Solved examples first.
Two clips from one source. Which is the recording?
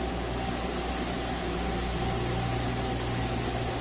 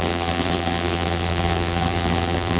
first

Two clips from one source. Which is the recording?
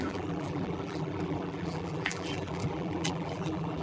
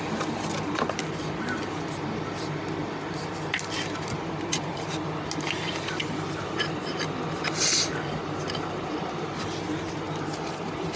second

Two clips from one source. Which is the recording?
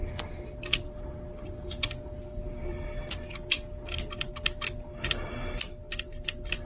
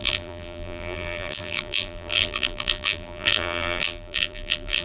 first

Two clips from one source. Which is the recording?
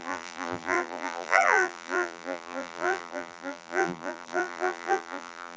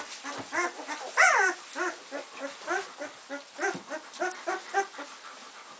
second